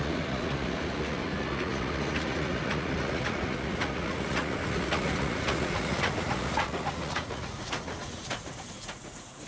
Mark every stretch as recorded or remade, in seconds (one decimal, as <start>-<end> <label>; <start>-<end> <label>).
0.0-9.5 remade